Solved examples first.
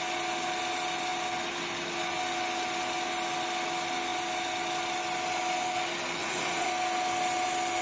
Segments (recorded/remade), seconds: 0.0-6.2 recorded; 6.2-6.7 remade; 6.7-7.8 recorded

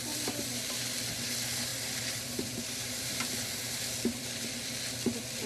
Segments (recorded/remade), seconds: 0.0-1.7 recorded; 1.7-4.5 remade; 4.5-5.5 recorded

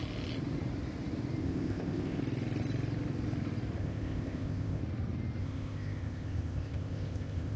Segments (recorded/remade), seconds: 0.0-1.4 recorded; 1.4-2.2 remade; 2.2-3.8 recorded; 3.8-4.8 remade; 4.8-5.4 recorded; 5.4-7.6 remade

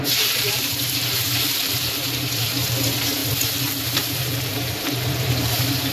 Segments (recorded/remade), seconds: 0.0-3.2 remade; 3.2-3.8 recorded; 3.8-5.9 remade